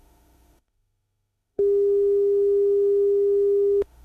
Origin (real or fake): fake